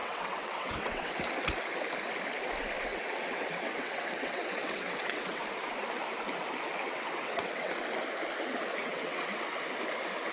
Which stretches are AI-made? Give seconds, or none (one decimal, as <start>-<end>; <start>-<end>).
0.0-1.1; 2.9-5.4; 6.8-7.7; 8.8-9.6